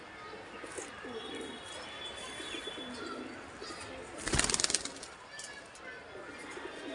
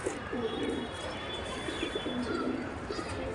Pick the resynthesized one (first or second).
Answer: second